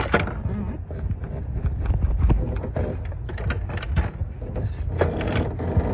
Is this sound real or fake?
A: real